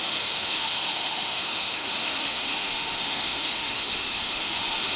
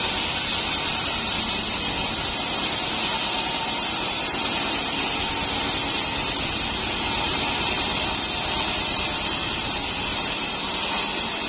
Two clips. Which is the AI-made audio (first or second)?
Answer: first